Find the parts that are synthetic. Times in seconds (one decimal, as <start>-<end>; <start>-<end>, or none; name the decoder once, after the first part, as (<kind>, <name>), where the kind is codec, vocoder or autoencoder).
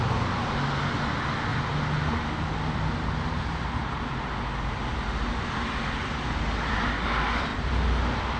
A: 7.5-8.4 (vocoder, BigVGAN v2)